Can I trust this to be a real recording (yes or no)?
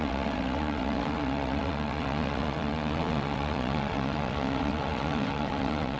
no